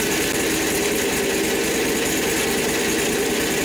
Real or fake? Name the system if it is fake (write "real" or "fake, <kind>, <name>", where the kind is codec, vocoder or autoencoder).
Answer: real